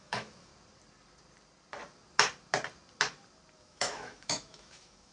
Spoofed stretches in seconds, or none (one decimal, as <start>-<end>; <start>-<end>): 0.0-0.5; 3.6-5.1